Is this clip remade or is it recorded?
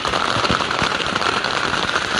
remade